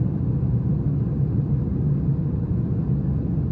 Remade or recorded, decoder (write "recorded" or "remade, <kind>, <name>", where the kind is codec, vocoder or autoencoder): recorded